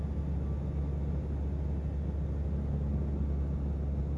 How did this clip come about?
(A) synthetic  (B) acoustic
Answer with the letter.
B